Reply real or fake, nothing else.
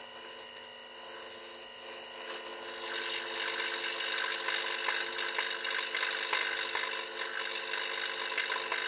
real